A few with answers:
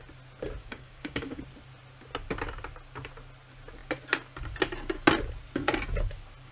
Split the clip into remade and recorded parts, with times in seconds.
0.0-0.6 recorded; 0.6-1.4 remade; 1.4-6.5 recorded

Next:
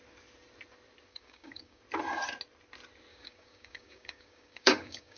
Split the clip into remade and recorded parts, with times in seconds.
0.0-1.1 recorded; 1.1-1.8 remade; 1.8-3.1 recorded; 3.1-5.2 remade

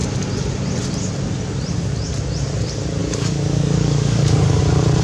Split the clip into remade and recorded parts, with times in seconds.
0.0-3.0 recorded; 3.0-4.6 remade; 4.6-5.0 recorded

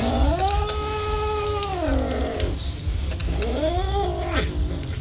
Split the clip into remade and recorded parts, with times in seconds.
0.0-5.0 recorded

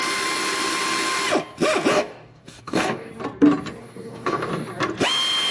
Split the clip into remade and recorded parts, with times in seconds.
0.0-1.9 recorded; 1.9-3.1 remade; 3.1-3.8 recorded; 3.8-4.5 remade; 4.5-5.5 recorded